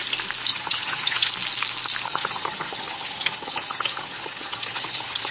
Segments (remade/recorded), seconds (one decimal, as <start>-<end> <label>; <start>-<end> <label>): 0.0-0.5 recorded; 0.5-1.3 remade; 1.3-2.1 recorded; 2.1-5.3 remade